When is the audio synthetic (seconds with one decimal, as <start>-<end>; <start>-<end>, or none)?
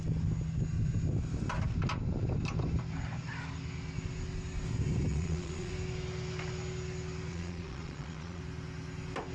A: 5.1-5.7; 7.3-8.4